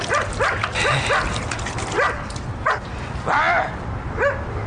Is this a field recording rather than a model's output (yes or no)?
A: yes